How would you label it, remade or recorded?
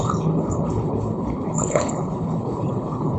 remade